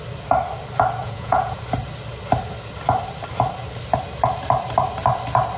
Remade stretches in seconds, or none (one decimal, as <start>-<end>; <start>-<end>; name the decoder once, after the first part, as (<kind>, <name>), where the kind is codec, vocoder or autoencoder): 1.0-1.6 (vocoder, Vocos)